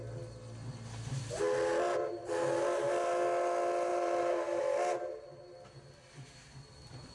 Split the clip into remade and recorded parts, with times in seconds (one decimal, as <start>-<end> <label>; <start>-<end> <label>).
0.0-3.9 recorded; 3.9-4.6 remade; 4.6-7.1 recorded